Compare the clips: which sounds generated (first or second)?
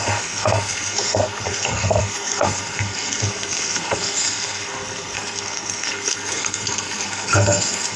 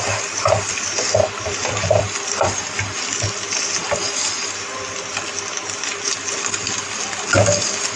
first